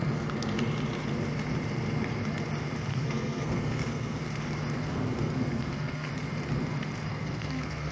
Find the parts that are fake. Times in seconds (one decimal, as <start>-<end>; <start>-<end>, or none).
2.9-4.2; 4.9-6.1; 7.1-7.9